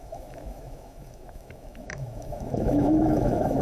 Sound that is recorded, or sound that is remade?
remade